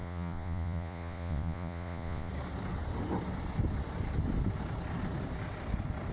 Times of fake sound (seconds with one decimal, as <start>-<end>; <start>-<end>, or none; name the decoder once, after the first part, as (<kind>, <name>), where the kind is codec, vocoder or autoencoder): 0.0-2.3 (vocoder, Vocos)